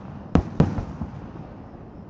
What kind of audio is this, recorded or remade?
remade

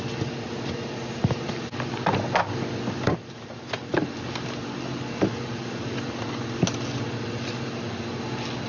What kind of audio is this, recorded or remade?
recorded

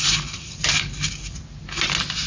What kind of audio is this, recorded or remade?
recorded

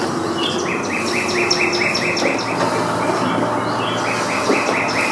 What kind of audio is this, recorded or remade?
recorded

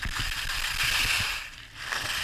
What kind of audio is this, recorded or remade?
recorded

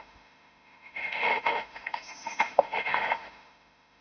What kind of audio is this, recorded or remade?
remade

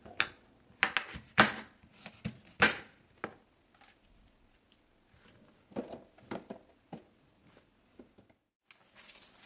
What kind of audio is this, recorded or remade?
recorded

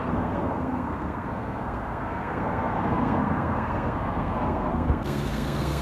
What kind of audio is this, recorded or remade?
remade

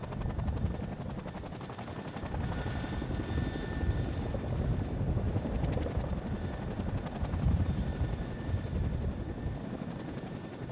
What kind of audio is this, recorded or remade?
recorded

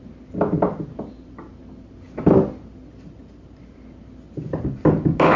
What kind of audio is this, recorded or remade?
recorded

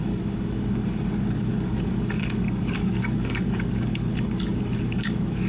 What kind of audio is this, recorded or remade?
remade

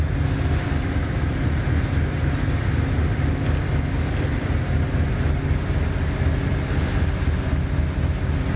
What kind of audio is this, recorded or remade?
recorded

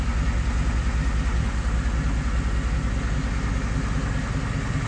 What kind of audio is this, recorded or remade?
recorded